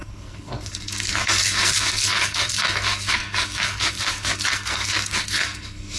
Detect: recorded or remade remade